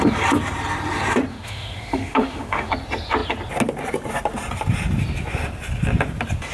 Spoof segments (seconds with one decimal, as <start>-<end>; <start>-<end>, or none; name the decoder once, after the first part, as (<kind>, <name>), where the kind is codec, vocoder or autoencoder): 1.3-2.7 (autoencoder, DAC-VAE)